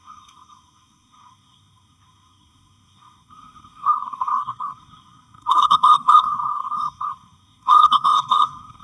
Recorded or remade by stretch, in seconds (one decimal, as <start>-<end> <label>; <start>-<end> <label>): 0.0-8.8 remade